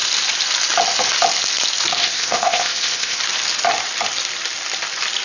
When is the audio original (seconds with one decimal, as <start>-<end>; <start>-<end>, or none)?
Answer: 0.0-2.0; 3.2-5.2